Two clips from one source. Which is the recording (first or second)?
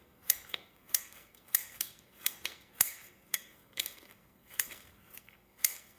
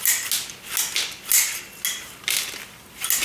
second